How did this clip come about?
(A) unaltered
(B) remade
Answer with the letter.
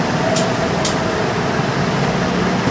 A